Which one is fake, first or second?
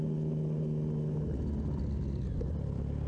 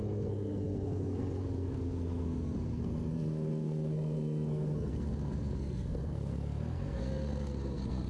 second